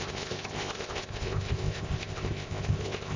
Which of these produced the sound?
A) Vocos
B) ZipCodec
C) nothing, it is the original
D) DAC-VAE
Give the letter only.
B